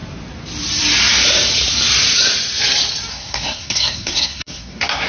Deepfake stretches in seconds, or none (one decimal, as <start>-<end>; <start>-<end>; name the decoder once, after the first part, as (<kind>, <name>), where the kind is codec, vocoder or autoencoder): 3.1-5.1 (codec, SNAC)